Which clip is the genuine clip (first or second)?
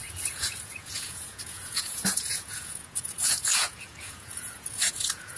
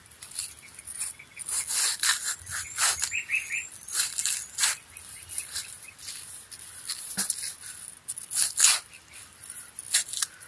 second